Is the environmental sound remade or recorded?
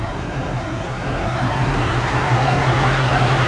remade